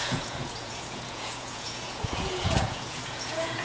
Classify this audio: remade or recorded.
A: remade